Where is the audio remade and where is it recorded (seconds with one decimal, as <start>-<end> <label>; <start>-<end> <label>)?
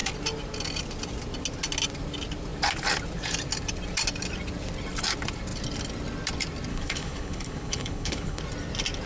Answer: 0.0-6.7 recorded; 6.7-8.4 remade; 8.4-9.1 recorded